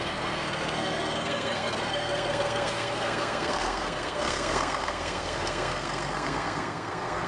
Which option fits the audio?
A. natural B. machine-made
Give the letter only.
B